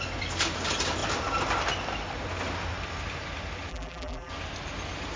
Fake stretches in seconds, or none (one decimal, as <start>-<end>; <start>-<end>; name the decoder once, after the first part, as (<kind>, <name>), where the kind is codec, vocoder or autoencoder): 3.7-4.3 (vocoder, BigVGAN v2)